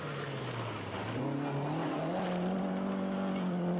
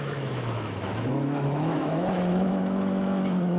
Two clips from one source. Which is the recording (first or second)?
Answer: first